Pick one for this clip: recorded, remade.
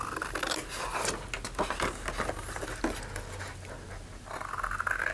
recorded